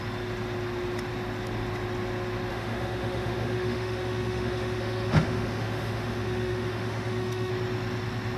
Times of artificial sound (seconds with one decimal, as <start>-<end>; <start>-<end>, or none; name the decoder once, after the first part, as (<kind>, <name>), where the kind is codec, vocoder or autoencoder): 2.5-7.5 (autoencoder, DAC-VAE)